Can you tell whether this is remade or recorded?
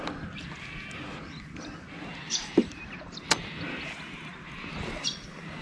remade